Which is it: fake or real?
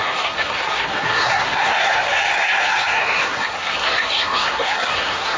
fake